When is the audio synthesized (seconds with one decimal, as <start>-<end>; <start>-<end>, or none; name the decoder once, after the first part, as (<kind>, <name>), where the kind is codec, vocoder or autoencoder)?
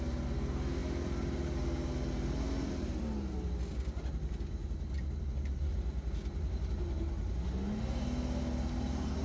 none